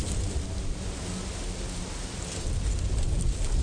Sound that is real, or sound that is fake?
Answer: real